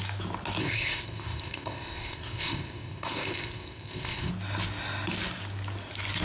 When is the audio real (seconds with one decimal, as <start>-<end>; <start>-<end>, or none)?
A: 0.0-0.6; 4.3-6.2